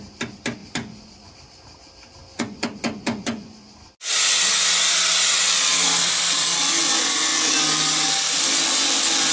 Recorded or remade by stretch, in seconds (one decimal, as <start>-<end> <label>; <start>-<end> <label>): 0.0-0.6 recorded; 0.6-1.3 remade; 1.3-2.2 recorded; 2.2-3.9 remade; 3.9-9.3 recorded